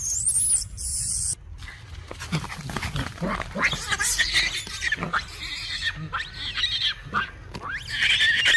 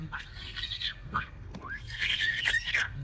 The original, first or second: first